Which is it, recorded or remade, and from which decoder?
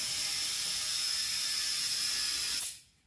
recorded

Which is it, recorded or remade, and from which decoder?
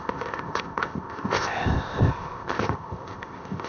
remade, codec, ZipCodec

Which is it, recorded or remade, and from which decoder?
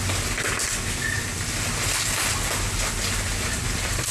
recorded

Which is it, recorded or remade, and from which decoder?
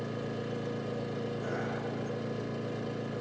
recorded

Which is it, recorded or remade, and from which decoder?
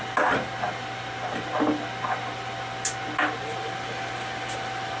recorded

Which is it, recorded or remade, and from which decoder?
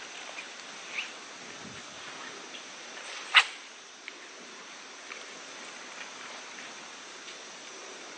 recorded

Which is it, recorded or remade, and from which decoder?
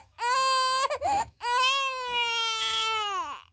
remade, autoencoder, DAC-VAE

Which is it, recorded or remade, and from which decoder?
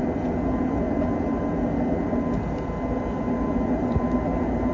recorded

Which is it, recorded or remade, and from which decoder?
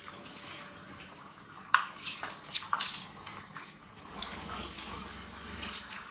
remade, codec, DAC